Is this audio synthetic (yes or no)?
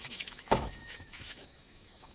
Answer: yes